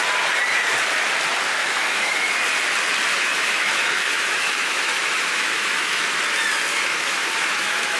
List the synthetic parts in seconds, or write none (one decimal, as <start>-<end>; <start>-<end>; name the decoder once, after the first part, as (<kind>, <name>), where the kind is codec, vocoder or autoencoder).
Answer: 1.6-2.3 (autoencoder, DAC-VAE); 3.1-6.2; 6.7-8.0